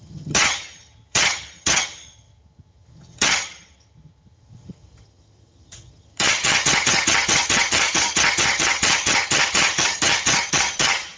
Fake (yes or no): yes